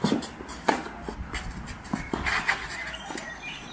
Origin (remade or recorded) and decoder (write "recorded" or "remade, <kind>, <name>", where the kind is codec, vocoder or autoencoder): recorded